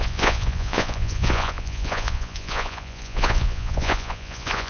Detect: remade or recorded remade